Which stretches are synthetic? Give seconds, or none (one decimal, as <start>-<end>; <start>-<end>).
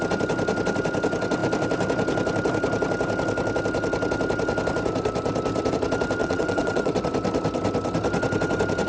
6.2-7.0